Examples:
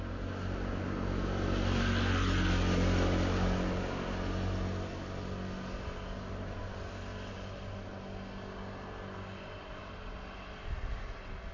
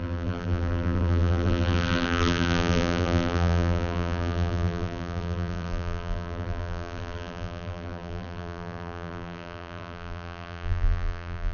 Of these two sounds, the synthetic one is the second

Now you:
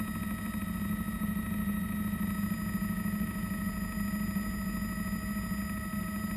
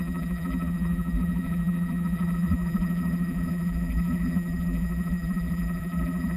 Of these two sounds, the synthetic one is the second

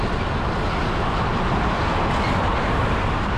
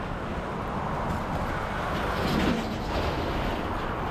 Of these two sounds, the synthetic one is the first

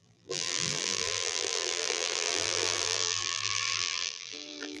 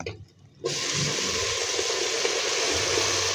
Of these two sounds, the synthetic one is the first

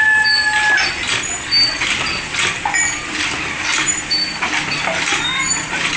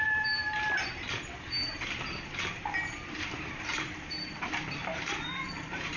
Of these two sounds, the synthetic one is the second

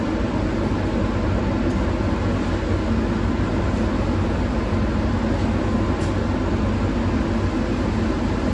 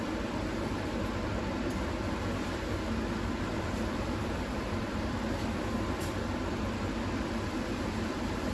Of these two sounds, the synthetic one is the second